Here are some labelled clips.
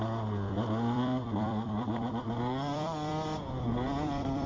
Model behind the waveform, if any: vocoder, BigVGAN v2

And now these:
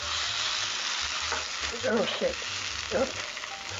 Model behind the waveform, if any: none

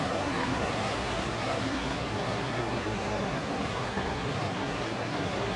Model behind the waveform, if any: codec, SNAC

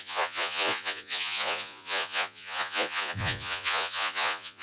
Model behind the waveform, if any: vocoder, Vocos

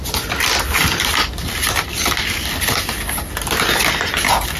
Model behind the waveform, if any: none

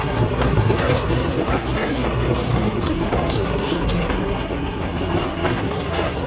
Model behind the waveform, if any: codec, SNAC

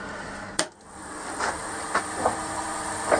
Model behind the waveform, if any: vocoder, BigVGAN v2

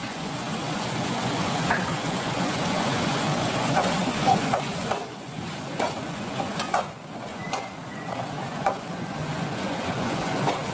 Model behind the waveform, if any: vocoder, Vocos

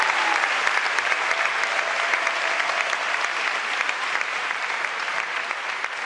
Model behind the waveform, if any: none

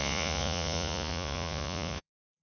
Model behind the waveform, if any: vocoder, Vocos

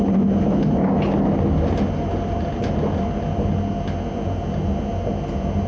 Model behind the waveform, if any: none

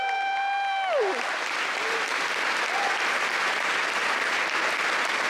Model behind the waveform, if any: none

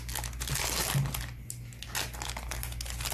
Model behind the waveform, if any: none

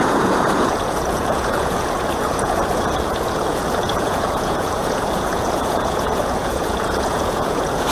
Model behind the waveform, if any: vocoder, Vocos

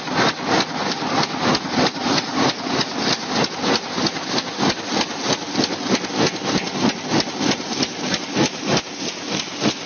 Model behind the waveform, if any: none